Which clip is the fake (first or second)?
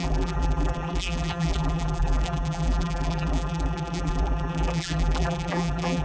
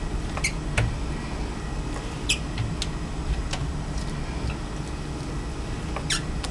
first